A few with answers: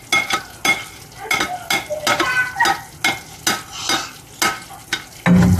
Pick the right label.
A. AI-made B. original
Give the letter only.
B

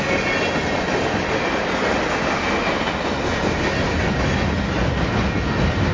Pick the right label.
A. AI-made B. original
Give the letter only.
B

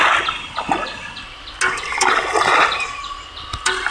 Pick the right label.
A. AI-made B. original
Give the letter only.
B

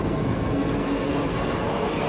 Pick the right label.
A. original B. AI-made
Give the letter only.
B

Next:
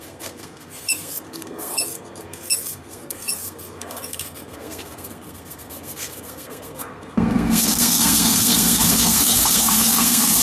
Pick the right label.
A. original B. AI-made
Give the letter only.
B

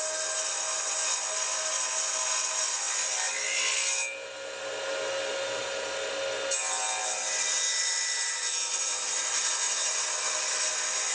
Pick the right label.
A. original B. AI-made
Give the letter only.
A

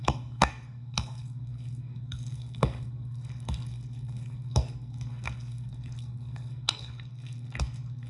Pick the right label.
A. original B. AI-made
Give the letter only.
B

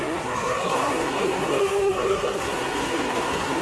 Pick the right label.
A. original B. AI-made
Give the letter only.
B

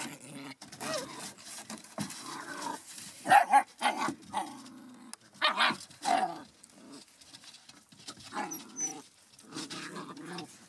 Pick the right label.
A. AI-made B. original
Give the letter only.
B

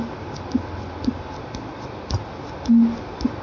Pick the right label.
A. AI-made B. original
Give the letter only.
B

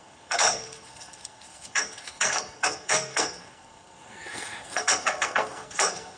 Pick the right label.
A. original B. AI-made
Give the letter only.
B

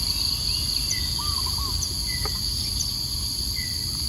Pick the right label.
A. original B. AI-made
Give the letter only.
A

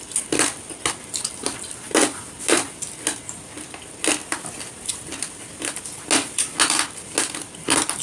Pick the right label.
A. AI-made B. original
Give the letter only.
B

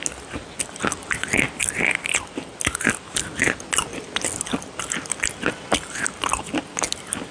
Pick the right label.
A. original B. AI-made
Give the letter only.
A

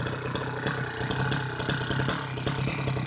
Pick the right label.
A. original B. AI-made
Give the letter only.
A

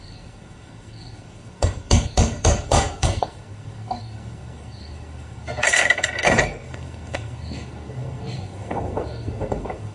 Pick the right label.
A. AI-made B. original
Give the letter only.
A